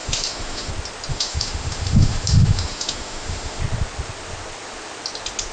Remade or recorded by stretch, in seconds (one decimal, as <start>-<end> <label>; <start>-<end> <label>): 0.0-0.7 remade; 0.7-1.1 recorded; 1.1-3.6 remade; 3.6-5.5 recorded